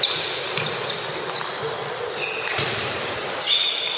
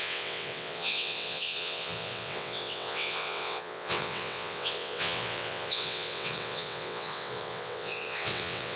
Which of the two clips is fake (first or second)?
second